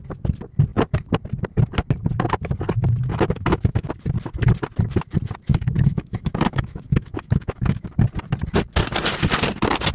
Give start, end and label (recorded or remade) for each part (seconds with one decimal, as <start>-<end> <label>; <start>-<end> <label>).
0.0-3.1 recorded; 3.1-3.9 remade; 3.9-5.5 recorded; 5.5-7.9 remade; 7.9-9.9 recorded